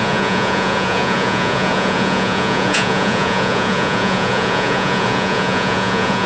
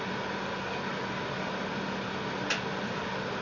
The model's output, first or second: first